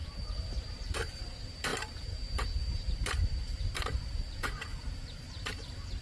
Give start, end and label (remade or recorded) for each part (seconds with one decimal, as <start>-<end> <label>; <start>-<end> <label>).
0.0-6.0 remade